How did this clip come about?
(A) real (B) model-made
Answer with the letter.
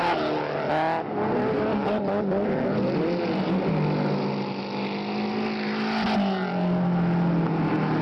A